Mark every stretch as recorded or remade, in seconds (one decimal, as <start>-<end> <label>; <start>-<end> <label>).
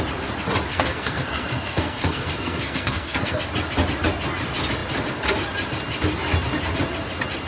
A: 0.0-0.7 recorded; 0.7-3.4 remade; 3.4-7.5 recorded